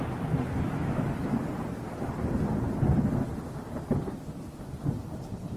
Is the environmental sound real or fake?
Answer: real